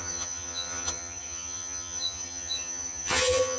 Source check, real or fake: fake